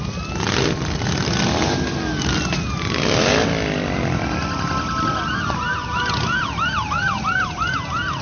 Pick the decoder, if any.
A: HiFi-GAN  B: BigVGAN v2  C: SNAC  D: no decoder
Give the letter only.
D